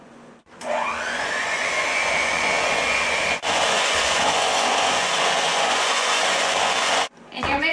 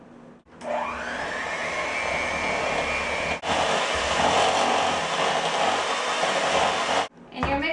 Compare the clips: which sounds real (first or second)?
second